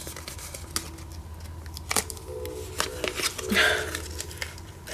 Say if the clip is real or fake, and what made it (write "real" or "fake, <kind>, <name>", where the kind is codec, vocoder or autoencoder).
real